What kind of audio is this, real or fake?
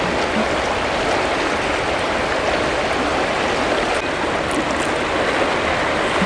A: real